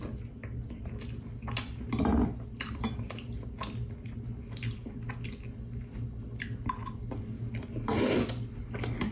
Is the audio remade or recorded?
recorded